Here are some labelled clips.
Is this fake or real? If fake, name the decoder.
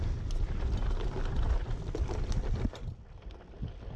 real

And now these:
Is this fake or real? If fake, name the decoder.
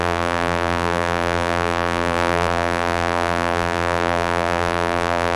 fake, vocoder, BigVGAN v2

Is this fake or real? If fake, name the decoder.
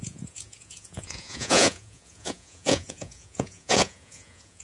fake, vocoder, Vocos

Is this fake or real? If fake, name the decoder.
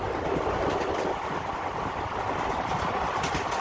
fake, vocoder, BigVGAN v2